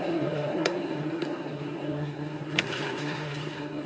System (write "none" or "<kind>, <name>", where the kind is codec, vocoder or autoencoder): codec, SNAC